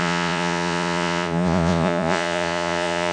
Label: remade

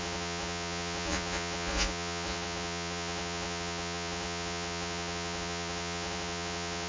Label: remade